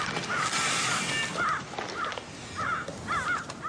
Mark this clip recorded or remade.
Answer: remade